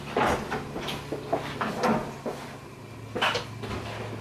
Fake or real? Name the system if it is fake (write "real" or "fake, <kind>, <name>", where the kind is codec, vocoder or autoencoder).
real